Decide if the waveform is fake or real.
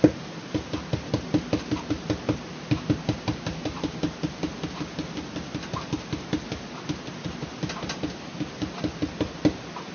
real